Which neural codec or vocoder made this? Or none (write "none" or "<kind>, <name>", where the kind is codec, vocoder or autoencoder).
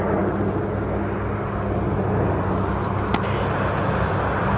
none